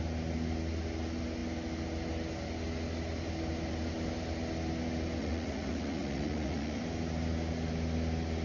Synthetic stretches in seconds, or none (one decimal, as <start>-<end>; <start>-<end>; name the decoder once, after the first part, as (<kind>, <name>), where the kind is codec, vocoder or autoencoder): 5.2-6.8 (vocoder, Vocos)